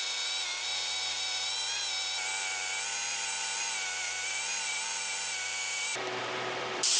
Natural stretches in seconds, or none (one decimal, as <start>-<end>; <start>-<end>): none